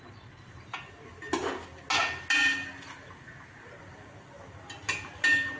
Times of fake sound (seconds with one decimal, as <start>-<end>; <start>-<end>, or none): none